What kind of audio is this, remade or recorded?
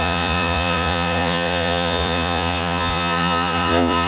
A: remade